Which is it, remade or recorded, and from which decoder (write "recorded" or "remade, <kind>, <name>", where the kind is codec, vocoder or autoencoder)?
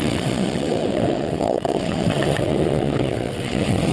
remade, vocoder, WaveNeXt